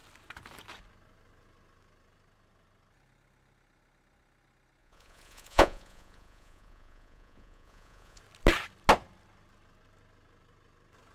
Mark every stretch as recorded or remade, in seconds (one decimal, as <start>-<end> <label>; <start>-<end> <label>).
0.0-4.8 recorded; 4.8-8.2 remade; 8.2-11.1 recorded